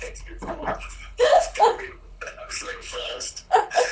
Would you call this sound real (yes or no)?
no